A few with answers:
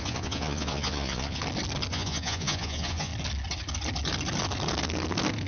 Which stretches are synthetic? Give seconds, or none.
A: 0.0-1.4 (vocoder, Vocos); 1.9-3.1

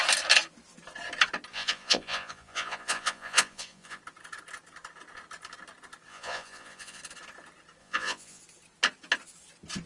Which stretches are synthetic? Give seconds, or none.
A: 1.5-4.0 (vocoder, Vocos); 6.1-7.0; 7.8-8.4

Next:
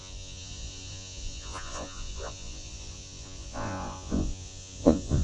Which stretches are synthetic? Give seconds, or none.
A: 0.0-5.2 (vocoder, Vocos)

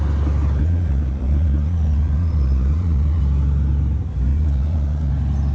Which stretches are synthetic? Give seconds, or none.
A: 0.6-3.2 (vocoder, Vocos); 4.3-5.1

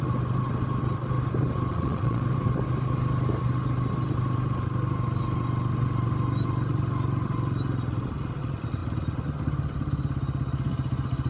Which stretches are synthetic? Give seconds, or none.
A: 1.7-2.2 (vocoder, Vocos)